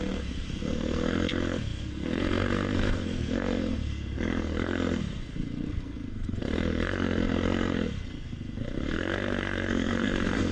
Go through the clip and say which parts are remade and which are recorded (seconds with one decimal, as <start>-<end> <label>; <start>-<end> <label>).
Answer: 0.0-10.5 remade